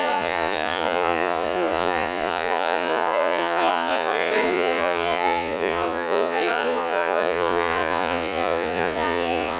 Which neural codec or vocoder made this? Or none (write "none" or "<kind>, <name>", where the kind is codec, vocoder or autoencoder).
vocoder, Vocos